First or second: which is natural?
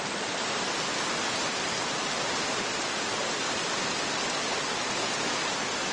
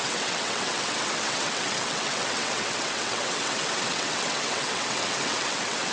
first